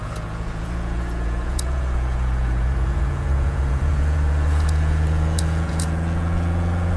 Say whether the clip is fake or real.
fake